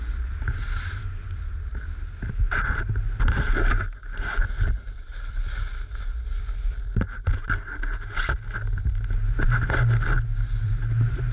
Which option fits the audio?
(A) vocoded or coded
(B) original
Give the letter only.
B